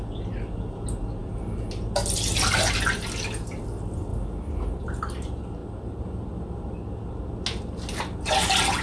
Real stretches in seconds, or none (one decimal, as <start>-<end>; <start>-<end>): 0.0-8.8